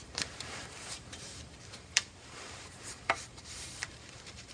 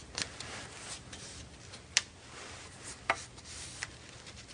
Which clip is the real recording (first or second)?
second